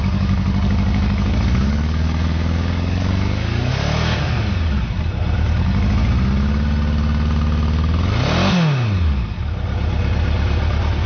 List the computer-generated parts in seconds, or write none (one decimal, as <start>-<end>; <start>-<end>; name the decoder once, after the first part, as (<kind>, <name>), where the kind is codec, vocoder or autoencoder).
0.0-3.7 (codec, DAC)